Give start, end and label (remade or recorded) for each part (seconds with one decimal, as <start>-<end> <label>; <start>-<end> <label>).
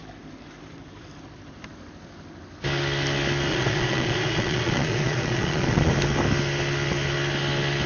0.0-3.5 recorded; 3.5-5.9 remade; 5.9-7.9 recorded